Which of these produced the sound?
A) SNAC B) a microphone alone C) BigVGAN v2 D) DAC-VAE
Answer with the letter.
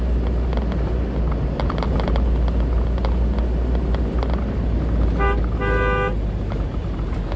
B